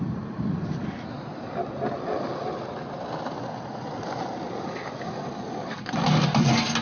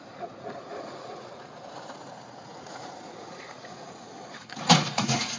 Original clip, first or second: first